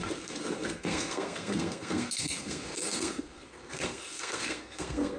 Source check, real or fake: fake